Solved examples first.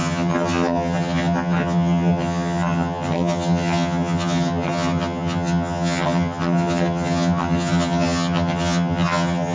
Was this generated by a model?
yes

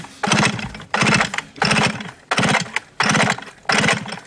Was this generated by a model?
no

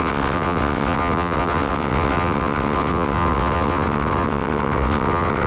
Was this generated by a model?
yes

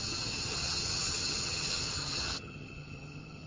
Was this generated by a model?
yes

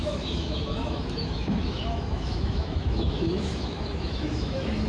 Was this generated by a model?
yes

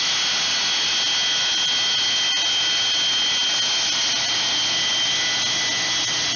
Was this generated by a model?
no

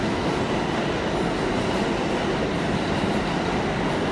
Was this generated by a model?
no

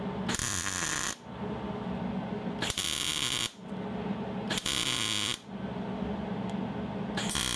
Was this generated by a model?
no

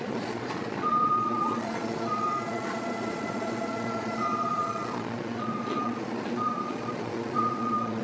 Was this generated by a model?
yes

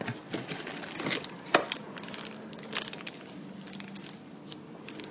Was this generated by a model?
no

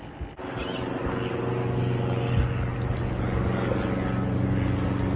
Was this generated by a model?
no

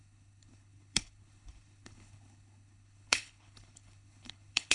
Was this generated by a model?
yes